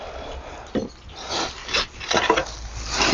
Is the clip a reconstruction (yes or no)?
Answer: no